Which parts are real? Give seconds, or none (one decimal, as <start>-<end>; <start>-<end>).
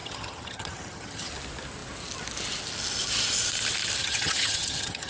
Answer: 1.3-4.0